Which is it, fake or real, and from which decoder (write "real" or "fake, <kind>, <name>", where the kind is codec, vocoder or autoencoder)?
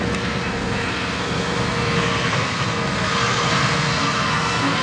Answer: fake, codec, SNAC